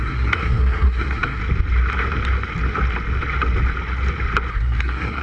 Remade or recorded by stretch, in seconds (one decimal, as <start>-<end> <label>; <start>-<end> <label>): 0.0-1.4 remade; 1.4-4.5 recorded; 4.5-5.2 remade